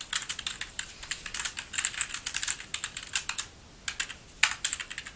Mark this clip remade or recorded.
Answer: recorded